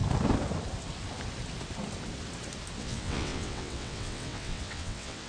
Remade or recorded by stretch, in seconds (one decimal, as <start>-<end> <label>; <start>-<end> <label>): 0.0-2.8 recorded; 2.8-5.3 remade